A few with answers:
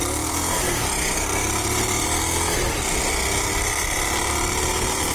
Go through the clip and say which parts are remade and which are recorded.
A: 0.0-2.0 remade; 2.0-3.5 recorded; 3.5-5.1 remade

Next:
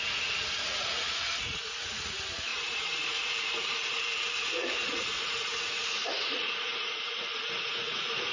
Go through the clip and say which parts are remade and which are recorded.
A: 0.0-8.3 remade

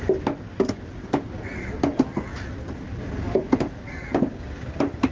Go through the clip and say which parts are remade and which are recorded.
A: 0.0-5.1 recorded

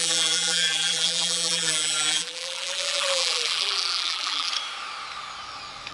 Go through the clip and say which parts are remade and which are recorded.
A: 0.0-4.5 remade; 4.5-5.9 recorded

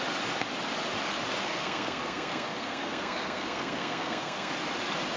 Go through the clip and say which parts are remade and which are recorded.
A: 0.0-1.4 recorded; 1.4-4.5 remade; 4.5-5.2 recorded

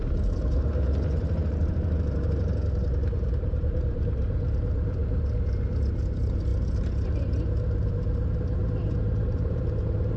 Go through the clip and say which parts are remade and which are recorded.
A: 0.0-10.2 remade